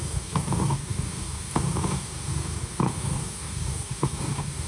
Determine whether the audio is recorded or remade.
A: remade